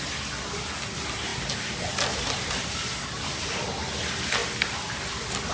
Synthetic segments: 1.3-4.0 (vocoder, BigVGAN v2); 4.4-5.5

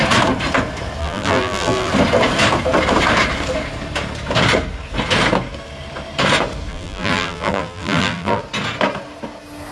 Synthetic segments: 1.0-1.9 (vocoder, BigVGAN v2); 6.7-8.4

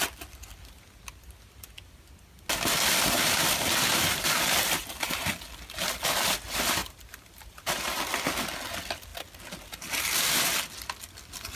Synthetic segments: 3.9-5.3 (vocoder, BigVGAN v2); 6.8-8.0

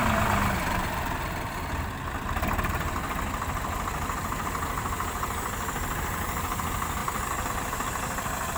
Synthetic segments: 0.0-7.0 (vocoder, BigVGAN v2); 7.5-8.6